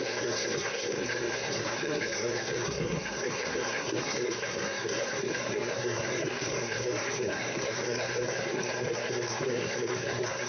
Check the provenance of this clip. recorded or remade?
remade